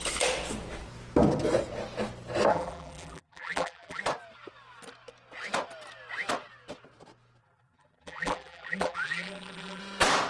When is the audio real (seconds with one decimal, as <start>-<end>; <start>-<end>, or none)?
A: 0.0-2.5; 4.0-7.4; 9.8-10.3